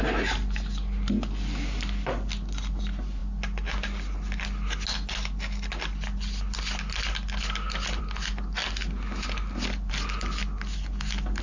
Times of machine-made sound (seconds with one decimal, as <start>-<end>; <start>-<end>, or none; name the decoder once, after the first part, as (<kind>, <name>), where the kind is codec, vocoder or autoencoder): none